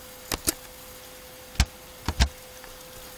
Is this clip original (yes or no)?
yes